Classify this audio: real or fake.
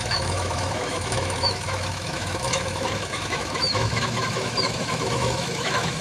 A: fake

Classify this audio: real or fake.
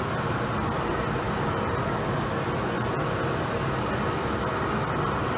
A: real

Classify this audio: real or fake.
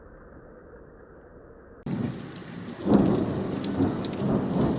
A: real